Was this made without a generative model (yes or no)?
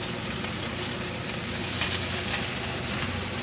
no